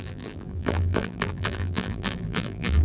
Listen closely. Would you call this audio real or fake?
fake